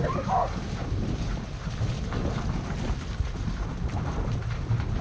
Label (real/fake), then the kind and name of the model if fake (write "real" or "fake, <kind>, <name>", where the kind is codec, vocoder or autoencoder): real